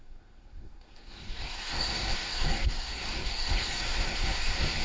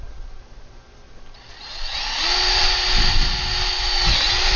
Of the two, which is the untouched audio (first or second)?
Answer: second